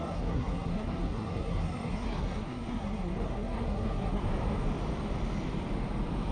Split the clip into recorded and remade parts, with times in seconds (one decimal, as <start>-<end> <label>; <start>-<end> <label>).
0.0-4.2 remade; 4.2-6.3 recorded